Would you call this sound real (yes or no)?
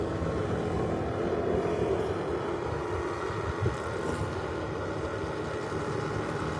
yes